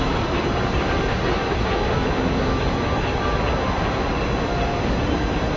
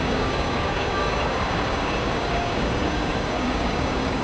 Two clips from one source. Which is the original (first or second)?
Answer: first